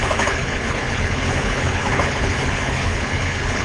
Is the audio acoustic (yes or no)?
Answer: no